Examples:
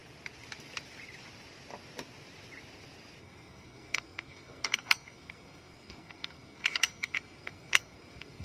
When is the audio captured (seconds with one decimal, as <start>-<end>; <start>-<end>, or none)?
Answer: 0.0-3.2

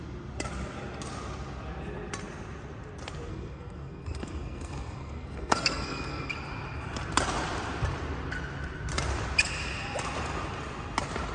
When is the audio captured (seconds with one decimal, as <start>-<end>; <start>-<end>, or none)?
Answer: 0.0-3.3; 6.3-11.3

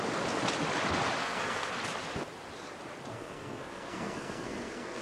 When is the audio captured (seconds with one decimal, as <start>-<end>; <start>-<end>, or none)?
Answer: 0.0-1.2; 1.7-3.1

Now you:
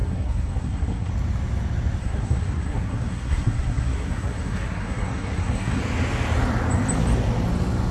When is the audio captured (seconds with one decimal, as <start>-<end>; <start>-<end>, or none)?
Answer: 1.1-2.0; 5.8-7.9

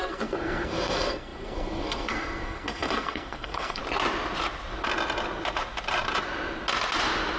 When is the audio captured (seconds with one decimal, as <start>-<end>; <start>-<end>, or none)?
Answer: 3.8-7.4

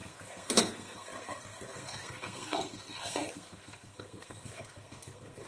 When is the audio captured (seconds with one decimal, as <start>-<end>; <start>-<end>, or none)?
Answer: none

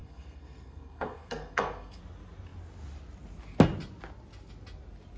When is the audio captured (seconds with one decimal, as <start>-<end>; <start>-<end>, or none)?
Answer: 2.0-5.2

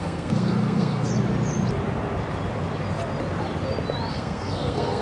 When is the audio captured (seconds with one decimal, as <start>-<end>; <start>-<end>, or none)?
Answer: 1.1-4.1